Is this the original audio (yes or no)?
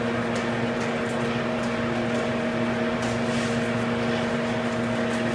yes